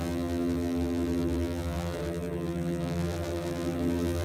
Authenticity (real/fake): fake